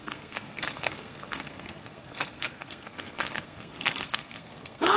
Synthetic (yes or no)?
yes